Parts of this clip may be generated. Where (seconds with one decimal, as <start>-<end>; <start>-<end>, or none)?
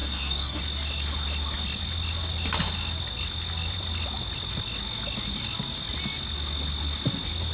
0.0-0.6